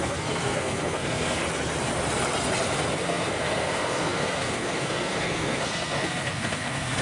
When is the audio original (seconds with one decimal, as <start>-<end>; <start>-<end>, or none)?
1.4-3.0